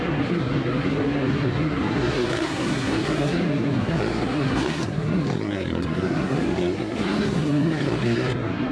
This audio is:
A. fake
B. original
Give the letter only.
A